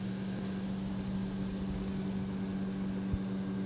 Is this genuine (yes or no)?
yes